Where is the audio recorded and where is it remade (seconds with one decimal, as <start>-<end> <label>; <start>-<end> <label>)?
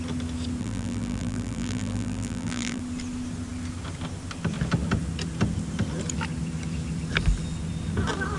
0.0-0.6 recorded; 0.6-2.8 remade; 2.8-8.4 recorded